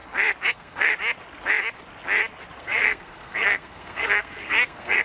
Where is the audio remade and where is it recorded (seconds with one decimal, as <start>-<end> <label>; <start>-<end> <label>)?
0.0-0.5 recorded; 0.5-0.9 remade; 0.9-2.6 recorded; 2.6-5.0 remade